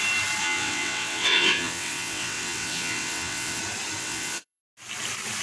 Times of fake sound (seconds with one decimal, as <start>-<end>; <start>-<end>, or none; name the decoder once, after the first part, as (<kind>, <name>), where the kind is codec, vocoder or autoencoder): 0.4-3.6 (vocoder, WaveNeXt); 4.0-4.6